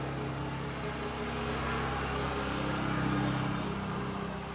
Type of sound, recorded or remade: recorded